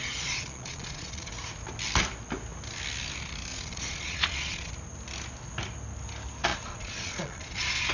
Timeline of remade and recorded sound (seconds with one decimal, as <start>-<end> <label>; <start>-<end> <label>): 0.0-1.3 remade; 1.3-3.5 recorded; 3.5-4.7 remade; 4.7-6.5 recorded; 6.5-7.9 remade